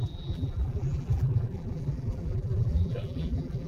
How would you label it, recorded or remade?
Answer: remade